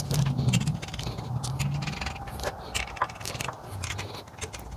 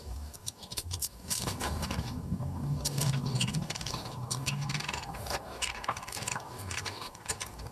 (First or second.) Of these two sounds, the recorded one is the first